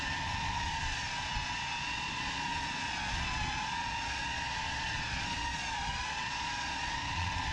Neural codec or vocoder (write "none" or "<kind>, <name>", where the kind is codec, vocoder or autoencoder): vocoder, Vocos